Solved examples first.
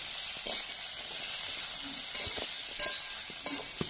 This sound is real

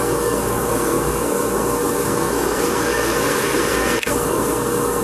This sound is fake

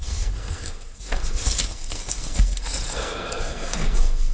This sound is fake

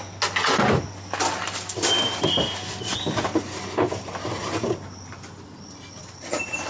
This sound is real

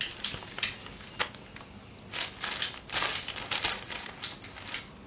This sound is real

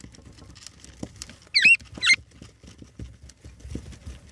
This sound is real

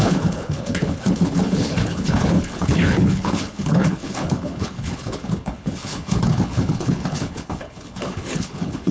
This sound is fake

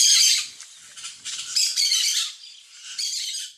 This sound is fake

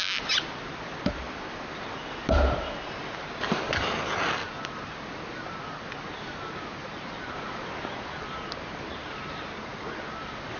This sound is real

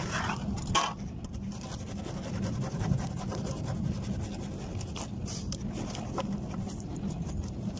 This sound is fake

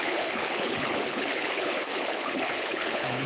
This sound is fake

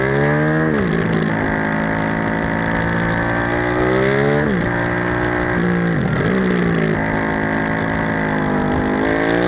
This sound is real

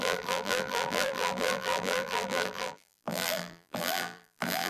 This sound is fake